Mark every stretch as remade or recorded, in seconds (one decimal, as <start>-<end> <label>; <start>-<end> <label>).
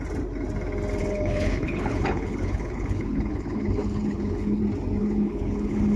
0.0-1.0 recorded; 1.0-4.6 remade; 4.6-5.0 recorded; 5.0-6.0 remade